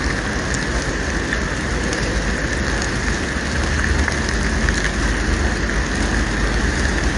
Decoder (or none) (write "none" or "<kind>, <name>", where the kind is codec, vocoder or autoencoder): none